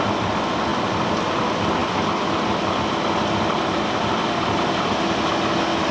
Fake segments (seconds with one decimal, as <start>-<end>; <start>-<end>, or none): none